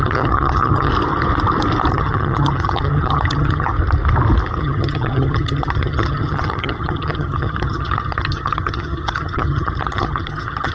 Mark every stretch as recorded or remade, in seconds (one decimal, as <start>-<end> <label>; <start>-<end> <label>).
0.0-0.9 remade; 0.9-1.9 recorded; 1.9-3.7 remade; 3.7-4.6 recorded; 4.6-10.7 remade